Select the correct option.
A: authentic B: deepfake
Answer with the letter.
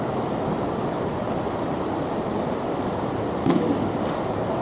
A